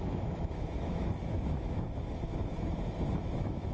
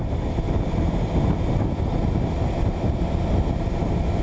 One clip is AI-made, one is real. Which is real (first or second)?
second